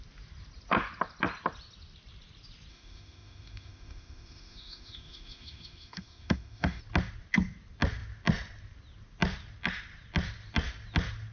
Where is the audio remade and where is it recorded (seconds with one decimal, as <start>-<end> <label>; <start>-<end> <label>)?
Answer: 0.0-2.7 recorded; 2.7-6.8 remade; 6.8-11.3 recorded